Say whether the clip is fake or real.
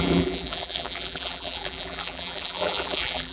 fake